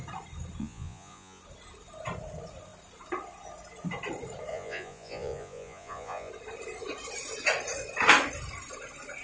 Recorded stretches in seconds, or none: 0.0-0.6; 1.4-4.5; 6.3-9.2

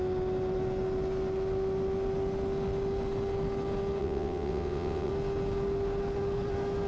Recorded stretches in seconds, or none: 0.0-4.0; 5.1-6.9

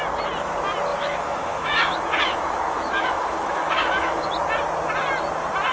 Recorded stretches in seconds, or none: 0.0-0.9; 4.3-5.7

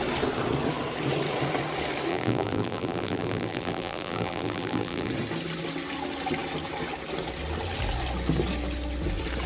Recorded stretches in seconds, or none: 0.0-2.1; 5.1-9.5

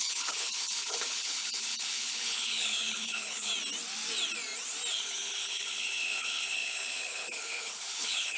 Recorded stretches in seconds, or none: 3.5-4.9